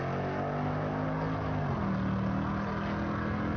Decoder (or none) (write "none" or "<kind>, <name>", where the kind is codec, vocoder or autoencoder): none